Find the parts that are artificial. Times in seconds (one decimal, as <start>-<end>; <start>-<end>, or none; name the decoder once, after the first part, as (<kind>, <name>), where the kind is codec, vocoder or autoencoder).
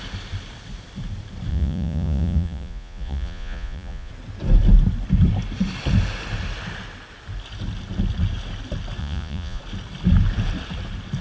1.5-4.1 (vocoder, Vocos); 9.0-9.6